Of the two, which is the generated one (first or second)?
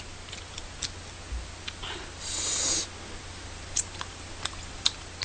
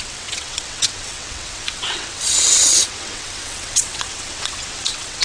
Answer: second